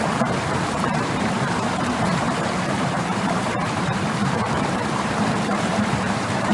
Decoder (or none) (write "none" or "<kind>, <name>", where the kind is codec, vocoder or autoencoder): vocoder, BigVGAN v2